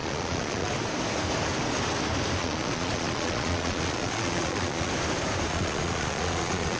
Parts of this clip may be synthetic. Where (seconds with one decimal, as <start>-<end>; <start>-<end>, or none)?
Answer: 0.0-0.7; 2.4-4.9; 5.5-6.8